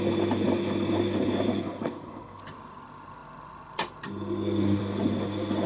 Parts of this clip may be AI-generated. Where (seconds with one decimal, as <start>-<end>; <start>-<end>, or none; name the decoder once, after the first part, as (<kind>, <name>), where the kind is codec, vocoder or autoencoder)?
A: 1.5-2.4 (codec, SNAC)